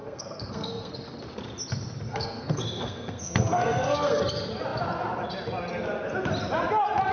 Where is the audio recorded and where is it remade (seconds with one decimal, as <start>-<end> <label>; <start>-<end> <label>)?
0.0-0.9 remade; 0.9-2.1 recorded; 2.1-4.2 remade; 4.2-7.1 recorded